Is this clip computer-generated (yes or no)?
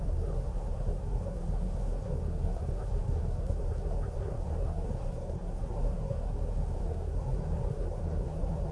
yes